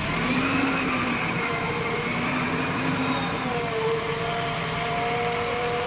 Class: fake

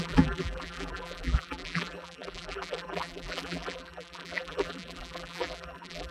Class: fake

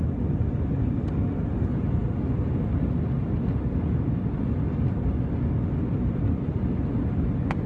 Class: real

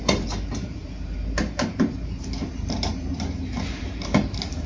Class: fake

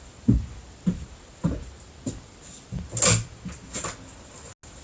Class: real